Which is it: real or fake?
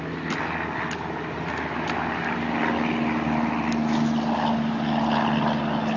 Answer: real